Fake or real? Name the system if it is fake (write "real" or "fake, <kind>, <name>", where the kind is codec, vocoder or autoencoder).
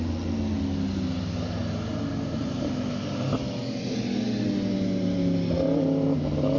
real